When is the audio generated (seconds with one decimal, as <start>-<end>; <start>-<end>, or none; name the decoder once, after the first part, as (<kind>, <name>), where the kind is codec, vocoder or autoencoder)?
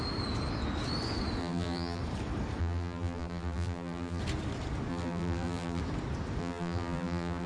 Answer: 1.4-2.0 (vocoder, BigVGAN v2); 2.6-4.2; 4.9-5.8; 6.4-7.5